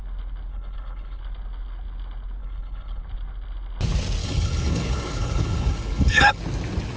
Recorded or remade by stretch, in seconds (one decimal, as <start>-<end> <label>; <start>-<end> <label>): 0.0-0.5 recorded; 0.5-1.2 remade; 1.2-2.4 recorded; 2.4-3.0 remade; 3.0-4.2 recorded; 4.2-6.4 remade; 6.4-7.0 recorded